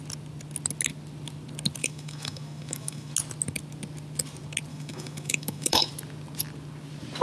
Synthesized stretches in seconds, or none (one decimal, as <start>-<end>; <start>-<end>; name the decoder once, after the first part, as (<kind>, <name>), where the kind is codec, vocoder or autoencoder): 1.8-3.1 (autoencoder, DAC-VAE); 4.7-5.9